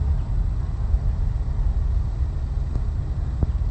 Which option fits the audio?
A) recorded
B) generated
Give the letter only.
A